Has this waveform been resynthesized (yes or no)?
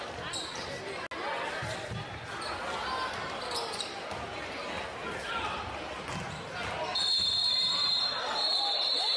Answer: no